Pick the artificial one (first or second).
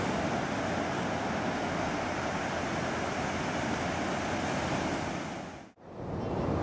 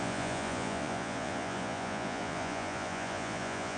second